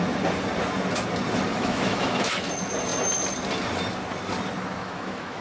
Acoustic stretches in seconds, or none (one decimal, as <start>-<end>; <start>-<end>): 0.0-1.5; 2.5-4.8